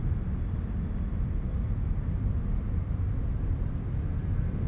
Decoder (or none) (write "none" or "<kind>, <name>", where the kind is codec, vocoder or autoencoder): none